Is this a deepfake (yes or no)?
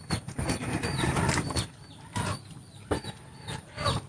no